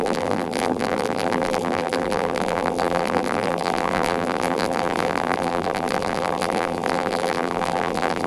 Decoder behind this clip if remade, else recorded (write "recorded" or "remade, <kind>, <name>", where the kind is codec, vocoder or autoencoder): remade, vocoder, BigVGAN v2